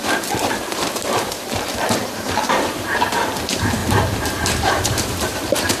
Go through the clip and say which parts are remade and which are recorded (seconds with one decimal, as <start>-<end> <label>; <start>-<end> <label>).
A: 0.0-0.4 recorded; 0.4-2.8 remade; 2.8-3.8 recorded; 3.8-5.8 remade